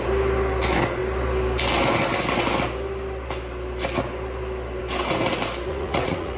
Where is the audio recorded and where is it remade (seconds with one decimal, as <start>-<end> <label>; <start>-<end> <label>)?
0.0-5.7 recorded; 5.7-6.4 remade